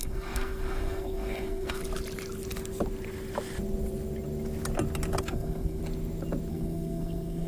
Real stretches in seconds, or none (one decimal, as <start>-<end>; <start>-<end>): 1.8-5.2; 5.8-6.5